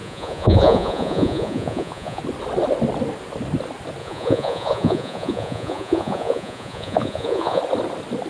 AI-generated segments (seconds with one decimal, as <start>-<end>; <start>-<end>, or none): 0.0-2.2; 4.0-7.6